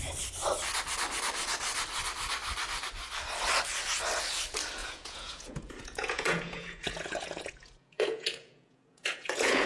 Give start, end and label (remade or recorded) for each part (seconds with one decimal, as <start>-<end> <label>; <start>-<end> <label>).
0.0-4.8 recorded; 4.8-9.7 remade